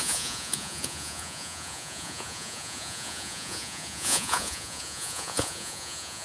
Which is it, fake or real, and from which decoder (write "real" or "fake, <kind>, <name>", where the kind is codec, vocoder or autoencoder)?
fake, vocoder, Vocos